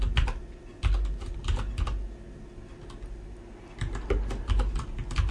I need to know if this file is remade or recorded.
recorded